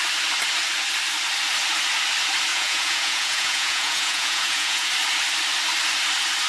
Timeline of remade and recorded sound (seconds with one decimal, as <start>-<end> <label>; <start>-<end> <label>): 0.0-2.5 recorded; 2.5-4.9 remade; 4.9-6.5 recorded

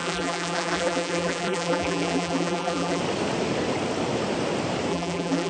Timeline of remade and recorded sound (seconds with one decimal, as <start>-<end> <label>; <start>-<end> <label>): 0.0-3.0 remade; 3.0-4.9 recorded; 4.9-5.5 remade

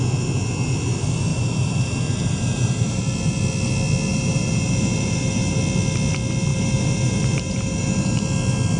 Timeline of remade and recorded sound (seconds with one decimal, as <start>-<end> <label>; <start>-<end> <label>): 0.0-1.3 recorded; 1.3-3.0 remade; 3.0-4.1 recorded; 4.1-5.6 remade; 5.6-6.5 recorded; 6.5-8.2 remade; 8.2-8.8 recorded